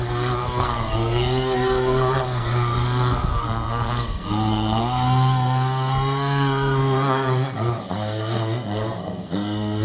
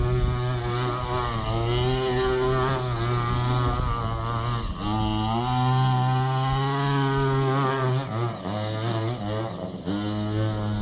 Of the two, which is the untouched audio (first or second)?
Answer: second